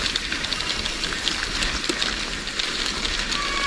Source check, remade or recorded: recorded